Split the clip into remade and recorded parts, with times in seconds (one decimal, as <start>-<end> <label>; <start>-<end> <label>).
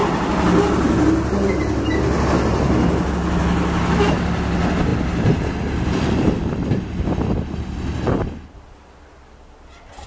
0.0-10.1 recorded